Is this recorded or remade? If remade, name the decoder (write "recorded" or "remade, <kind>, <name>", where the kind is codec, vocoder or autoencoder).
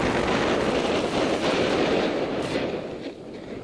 recorded